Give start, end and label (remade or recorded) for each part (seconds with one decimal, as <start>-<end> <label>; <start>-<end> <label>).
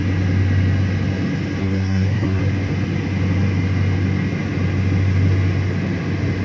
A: 0.0-1.6 recorded; 1.6-2.4 remade; 2.4-6.4 recorded